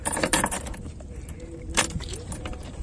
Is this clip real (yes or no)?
no